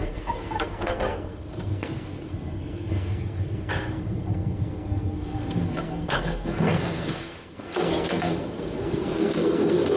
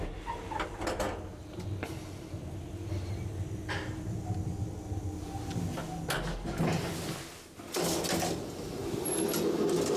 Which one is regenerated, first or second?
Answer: first